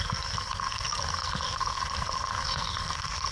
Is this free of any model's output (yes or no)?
no